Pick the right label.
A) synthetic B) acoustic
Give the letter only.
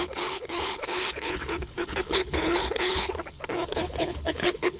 A